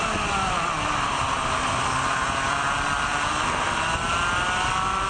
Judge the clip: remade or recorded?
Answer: recorded